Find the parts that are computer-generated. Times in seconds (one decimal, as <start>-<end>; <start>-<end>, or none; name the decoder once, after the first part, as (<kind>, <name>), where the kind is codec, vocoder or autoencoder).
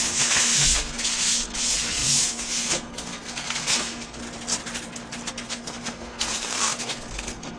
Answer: 0.0-4.2 (codec, SNAC); 5.3-7.6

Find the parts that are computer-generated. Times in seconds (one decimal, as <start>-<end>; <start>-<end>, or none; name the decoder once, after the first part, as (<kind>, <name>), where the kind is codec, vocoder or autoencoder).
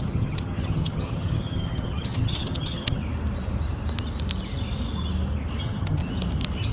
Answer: 0.0-3.0 (vocoder, HiFi-GAN); 5.6-6.0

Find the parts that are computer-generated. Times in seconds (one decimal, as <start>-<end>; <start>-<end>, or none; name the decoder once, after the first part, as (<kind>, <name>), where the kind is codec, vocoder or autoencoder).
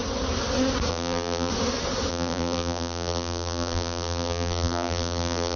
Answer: 0.9-1.5 (vocoder, BigVGAN v2); 2.1-5.6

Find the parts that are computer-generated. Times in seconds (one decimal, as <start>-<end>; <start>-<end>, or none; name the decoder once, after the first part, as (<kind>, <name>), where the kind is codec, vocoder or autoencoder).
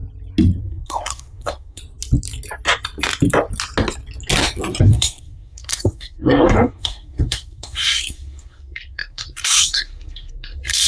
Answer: 0.6-1.8 (codec, SNAC); 4.8-10.9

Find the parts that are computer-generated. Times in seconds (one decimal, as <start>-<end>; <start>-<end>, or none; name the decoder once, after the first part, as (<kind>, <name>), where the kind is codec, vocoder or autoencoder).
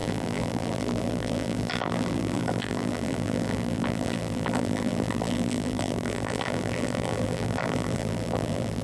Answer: 0.0-8.8 (vocoder, BigVGAN v2)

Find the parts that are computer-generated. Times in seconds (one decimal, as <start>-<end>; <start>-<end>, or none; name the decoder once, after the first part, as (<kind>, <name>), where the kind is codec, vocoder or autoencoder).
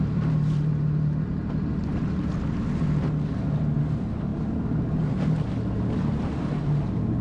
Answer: none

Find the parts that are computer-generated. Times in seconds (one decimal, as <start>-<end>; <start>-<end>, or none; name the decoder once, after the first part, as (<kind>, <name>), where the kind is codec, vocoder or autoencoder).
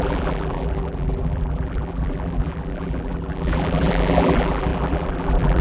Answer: 0.0-5.6 (vocoder, BigVGAN v2)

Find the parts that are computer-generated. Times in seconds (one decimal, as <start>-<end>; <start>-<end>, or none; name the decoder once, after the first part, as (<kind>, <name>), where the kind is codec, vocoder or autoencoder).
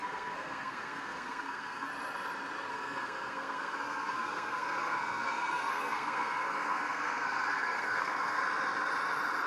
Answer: 0.0-1.9 (codec, SNAC); 2.7-8.4